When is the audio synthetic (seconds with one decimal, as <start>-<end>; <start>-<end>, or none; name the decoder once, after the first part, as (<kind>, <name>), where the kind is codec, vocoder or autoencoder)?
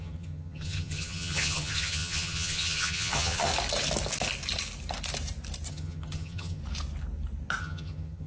0.0-3.5 (vocoder, HiFi-GAN); 5.7-6.6; 7.6-8.3